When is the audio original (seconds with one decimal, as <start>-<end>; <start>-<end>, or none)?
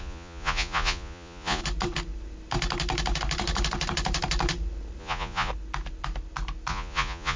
1.6-5.0; 5.5-6.7